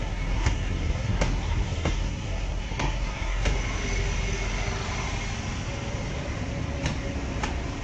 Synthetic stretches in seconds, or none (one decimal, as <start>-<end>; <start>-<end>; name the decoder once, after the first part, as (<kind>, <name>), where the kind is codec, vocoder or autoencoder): 0.0-3.5 (codec, SNAC)